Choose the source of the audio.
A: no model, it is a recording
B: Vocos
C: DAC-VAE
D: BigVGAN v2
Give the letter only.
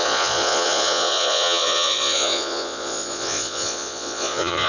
B